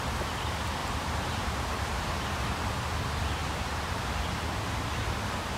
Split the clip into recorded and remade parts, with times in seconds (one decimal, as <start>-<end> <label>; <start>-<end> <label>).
0.0-0.8 recorded; 0.8-2.8 remade; 2.8-3.4 recorded; 3.4-4.0 remade; 4.0-5.6 recorded